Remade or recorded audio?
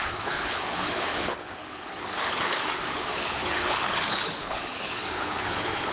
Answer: remade